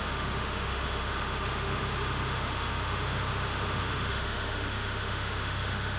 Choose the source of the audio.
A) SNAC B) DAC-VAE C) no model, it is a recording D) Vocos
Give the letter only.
B